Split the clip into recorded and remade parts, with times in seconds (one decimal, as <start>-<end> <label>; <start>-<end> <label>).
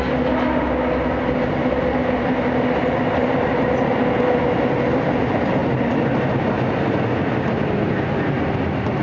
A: 0.0-9.0 recorded